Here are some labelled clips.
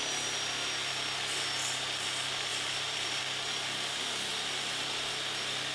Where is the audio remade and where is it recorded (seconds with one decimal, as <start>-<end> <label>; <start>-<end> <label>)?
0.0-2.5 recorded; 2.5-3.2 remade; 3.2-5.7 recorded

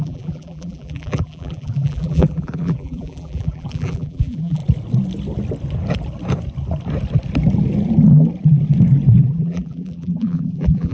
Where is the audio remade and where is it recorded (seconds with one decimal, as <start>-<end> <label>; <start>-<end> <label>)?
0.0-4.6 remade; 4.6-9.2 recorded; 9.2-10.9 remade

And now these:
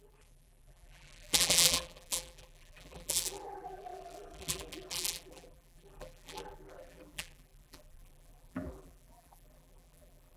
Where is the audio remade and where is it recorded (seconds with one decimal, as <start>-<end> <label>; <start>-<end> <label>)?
0.0-10.4 remade

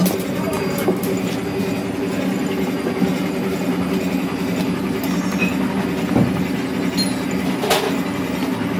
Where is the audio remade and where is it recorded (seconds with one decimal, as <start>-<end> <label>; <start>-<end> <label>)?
0.0-8.8 recorded

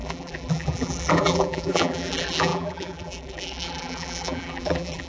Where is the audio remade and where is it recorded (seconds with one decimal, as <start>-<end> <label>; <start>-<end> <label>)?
0.0-5.1 remade

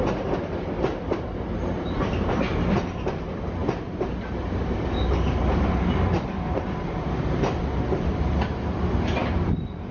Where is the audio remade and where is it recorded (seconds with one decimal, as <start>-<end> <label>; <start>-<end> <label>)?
0.0-0.9 recorded; 0.9-2.6 remade; 2.6-9.9 recorded